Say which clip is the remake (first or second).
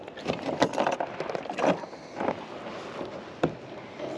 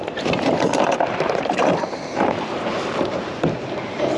second